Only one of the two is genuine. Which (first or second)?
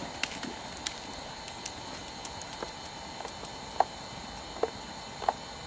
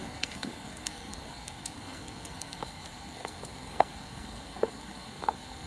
first